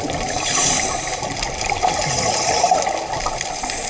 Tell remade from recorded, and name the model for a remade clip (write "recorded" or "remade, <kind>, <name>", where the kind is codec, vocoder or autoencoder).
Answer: recorded